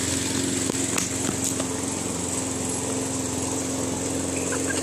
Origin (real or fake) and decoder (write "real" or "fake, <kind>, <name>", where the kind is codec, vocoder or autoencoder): real